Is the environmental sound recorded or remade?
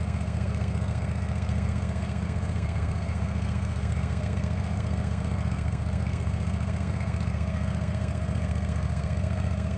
remade